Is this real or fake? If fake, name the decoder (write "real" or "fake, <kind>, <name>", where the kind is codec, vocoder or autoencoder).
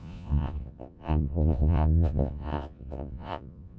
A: fake, vocoder, Vocos